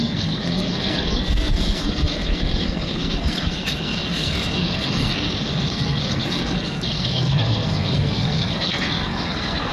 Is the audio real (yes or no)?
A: no